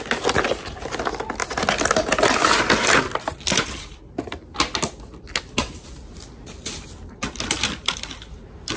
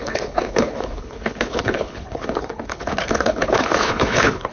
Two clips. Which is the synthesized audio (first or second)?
second